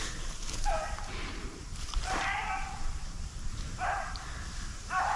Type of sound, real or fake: fake